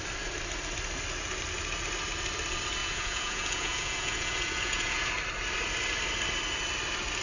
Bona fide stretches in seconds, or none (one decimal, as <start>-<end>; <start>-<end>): 0.0-2.8; 5.1-7.2